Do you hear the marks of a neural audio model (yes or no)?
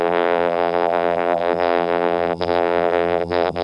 yes